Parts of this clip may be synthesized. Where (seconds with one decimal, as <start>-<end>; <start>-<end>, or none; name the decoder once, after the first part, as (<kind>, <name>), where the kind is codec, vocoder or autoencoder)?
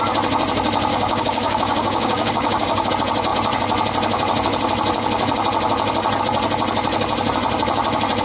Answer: 0.9-2.9 (codec, DAC)